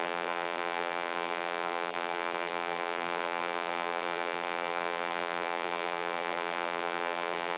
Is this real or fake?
fake